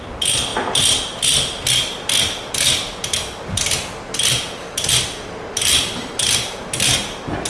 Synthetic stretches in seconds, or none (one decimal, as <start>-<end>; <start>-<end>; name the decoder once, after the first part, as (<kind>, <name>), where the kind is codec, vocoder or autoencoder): none